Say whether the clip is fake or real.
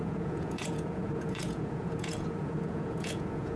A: fake